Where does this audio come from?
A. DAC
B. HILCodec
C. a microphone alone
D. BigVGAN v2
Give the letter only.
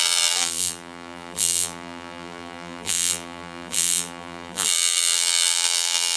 D